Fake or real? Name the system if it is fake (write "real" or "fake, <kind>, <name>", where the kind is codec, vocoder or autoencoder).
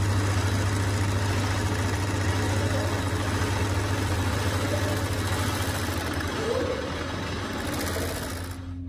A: real